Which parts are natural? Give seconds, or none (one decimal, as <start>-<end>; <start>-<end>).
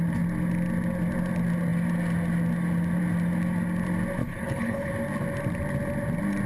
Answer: 0.0-4.2; 4.9-6.5